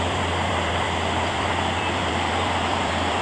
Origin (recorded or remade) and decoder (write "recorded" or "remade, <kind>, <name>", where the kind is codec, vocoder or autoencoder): remade, vocoder, BigVGAN v2